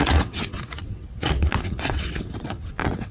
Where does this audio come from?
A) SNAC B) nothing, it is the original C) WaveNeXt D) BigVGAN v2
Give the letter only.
C